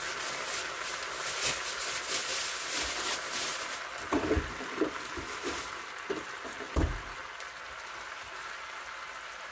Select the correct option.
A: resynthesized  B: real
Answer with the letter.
B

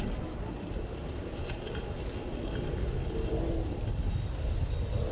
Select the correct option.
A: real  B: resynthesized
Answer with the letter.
A